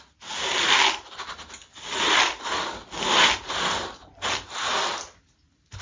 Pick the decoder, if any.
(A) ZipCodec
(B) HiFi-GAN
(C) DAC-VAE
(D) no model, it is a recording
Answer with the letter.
D